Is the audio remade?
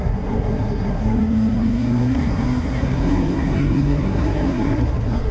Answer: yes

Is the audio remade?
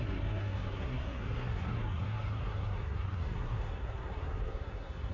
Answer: yes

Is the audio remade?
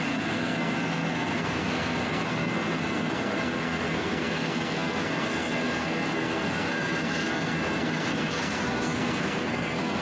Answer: yes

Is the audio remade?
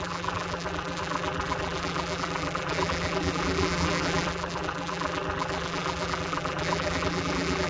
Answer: yes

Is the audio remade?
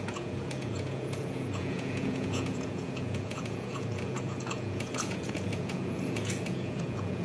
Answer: yes